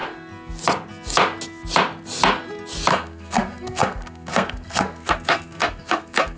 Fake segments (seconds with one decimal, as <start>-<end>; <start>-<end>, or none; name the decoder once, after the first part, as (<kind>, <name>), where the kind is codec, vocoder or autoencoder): 2.9-6.4 (codec, SNAC)